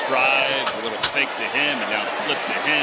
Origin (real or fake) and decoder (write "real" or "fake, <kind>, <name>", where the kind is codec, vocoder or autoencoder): real